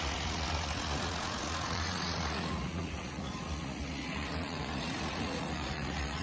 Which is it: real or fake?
fake